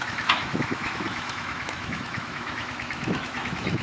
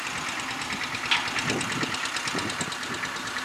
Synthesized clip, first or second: first